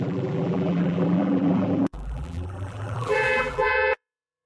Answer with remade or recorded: remade